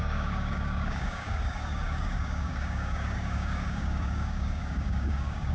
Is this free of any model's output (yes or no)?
no